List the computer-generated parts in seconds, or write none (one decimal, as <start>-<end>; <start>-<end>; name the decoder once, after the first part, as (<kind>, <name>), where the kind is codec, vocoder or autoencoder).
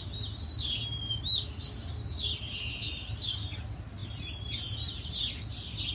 none